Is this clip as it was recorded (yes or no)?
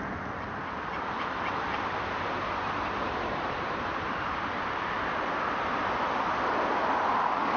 yes